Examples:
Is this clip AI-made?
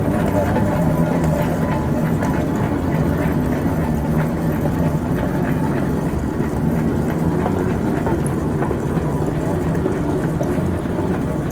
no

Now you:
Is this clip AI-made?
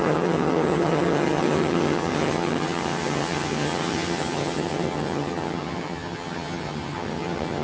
yes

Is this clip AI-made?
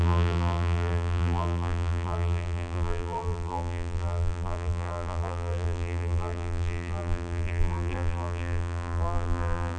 yes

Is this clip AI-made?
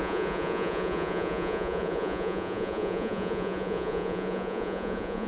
yes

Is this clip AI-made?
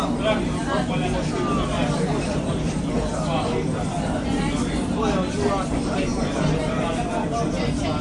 no